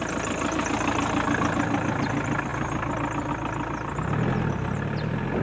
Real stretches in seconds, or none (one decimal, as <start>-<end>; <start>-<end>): 0.0-5.4